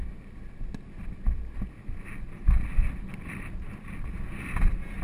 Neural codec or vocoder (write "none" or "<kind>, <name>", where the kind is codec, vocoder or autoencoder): none